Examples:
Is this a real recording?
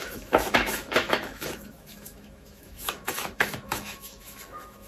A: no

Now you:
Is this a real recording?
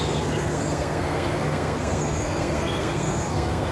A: no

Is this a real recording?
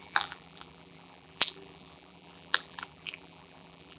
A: no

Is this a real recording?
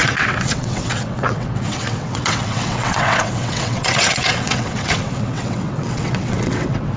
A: no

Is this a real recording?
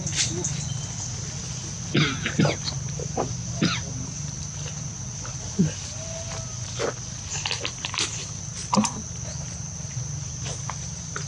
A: yes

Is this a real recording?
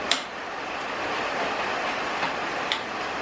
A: no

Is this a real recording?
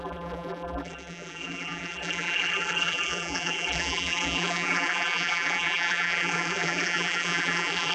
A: no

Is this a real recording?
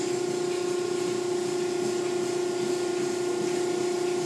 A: yes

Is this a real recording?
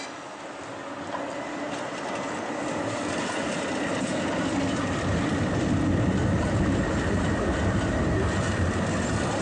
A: yes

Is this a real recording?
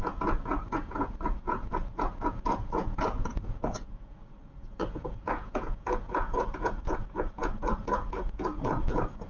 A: no